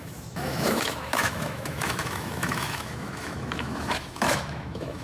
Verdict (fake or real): fake